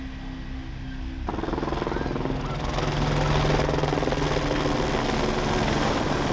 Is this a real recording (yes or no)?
yes